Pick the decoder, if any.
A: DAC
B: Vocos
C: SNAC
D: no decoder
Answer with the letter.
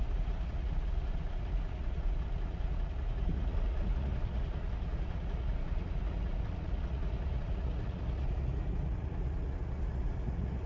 B